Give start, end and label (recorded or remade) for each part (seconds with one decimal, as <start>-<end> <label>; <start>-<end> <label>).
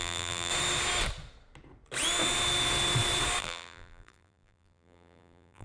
0.0-0.5 remade; 0.5-3.4 recorded; 3.4-5.6 remade